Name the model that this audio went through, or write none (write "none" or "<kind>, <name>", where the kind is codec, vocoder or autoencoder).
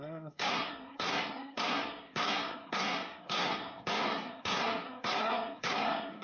codec, SNAC